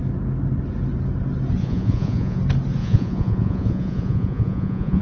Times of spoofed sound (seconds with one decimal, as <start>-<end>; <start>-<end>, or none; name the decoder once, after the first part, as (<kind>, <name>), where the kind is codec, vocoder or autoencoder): 1.6-2.4 (vocoder, Vocos); 2.8-5.0